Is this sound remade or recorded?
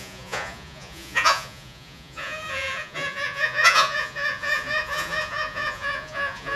remade